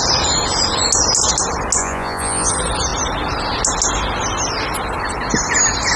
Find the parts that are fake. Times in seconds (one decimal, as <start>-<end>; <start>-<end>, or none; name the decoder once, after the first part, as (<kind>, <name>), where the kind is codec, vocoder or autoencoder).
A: 1.8-2.5 (vocoder, Vocos)